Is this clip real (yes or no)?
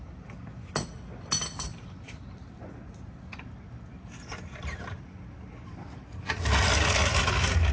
yes